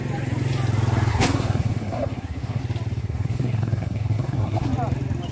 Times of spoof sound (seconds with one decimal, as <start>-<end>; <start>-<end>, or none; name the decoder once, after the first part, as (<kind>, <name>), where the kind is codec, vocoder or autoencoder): 1.1-2.6 (codec, SNAC); 3.0-4.7